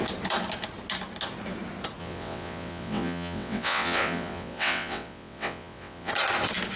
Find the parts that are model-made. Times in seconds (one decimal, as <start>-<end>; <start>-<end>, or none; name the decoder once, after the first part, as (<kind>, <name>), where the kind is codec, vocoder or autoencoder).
2.0-6.1 (vocoder, WaveNeXt)